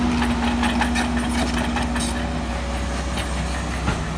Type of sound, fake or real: real